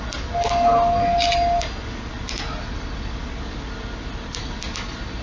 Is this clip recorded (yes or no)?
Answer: yes